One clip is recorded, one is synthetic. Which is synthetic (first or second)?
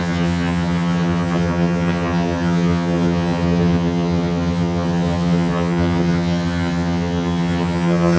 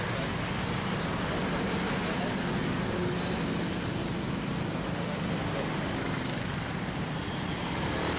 first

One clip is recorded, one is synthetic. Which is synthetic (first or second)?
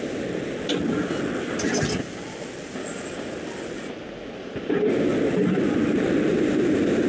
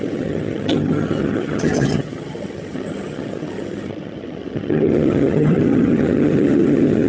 second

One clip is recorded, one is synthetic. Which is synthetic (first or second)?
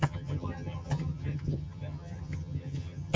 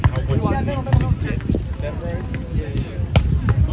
first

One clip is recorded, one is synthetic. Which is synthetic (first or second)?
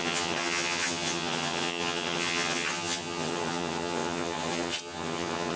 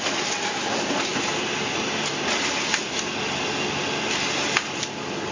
first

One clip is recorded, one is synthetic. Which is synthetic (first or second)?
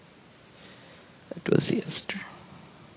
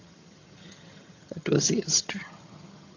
second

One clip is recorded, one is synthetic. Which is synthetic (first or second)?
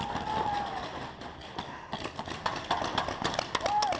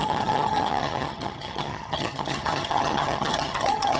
second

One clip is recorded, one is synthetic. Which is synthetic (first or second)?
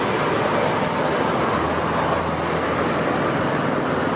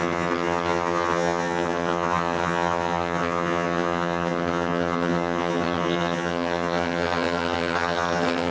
second